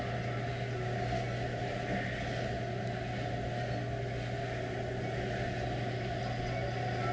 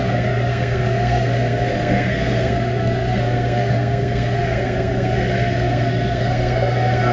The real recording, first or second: first